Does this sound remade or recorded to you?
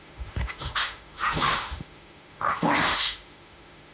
remade